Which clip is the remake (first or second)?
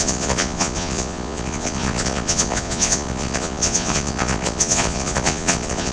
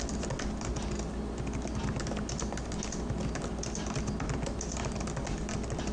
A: first